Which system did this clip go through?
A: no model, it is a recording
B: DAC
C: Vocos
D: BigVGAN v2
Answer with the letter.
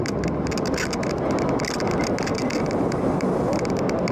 A